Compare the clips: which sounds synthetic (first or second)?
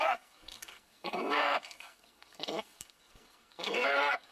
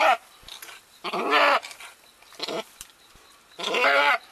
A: first